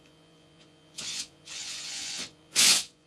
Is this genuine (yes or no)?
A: no